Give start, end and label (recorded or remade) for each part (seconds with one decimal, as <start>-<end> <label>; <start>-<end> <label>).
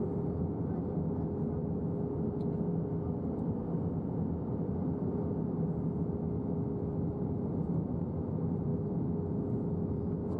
0.0-10.4 recorded